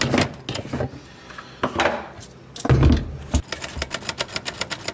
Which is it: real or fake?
real